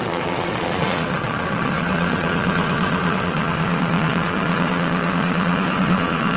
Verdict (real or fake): fake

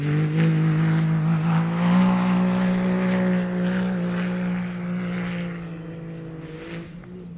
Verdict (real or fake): real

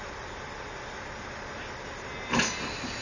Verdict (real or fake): real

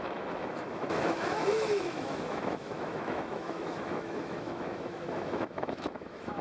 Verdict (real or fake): fake